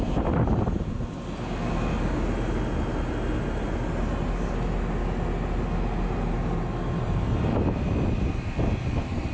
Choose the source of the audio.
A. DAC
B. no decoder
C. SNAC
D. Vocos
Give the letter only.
B